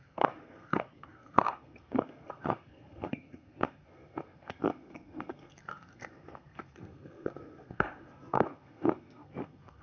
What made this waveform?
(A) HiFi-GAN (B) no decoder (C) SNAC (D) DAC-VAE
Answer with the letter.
C